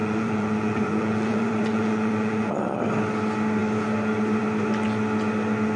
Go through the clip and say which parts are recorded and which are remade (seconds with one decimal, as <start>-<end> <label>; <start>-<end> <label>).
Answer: 0.0-2.5 remade; 2.5-5.8 recorded